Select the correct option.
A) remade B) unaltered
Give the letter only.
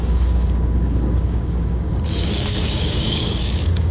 A